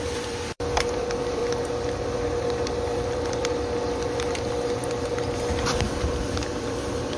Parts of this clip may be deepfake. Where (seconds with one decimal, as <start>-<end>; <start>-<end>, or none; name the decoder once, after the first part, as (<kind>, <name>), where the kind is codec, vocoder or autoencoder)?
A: 0.0-1.4 (vocoder, BigVGAN v2); 5.5-7.2